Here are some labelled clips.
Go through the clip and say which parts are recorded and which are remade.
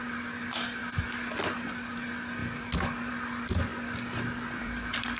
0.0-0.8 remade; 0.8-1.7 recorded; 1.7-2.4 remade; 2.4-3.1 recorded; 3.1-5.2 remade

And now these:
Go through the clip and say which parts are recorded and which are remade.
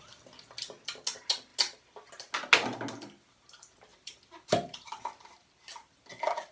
0.0-3.9 recorded; 3.9-5.0 remade; 5.0-6.5 recorded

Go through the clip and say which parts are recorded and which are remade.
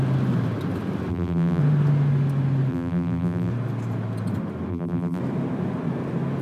0.0-1.1 recorded; 1.1-1.6 remade; 1.6-2.7 recorded; 2.7-3.5 remade; 3.5-4.7 recorded; 4.7-5.2 remade; 5.2-6.4 recorded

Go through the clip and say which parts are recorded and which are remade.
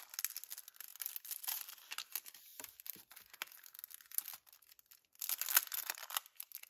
0.0-6.7 recorded